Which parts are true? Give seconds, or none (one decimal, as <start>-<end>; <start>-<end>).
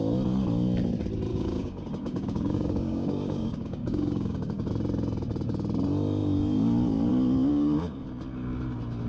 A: 0.0-1.3; 4.7-7.5; 8.0-9.1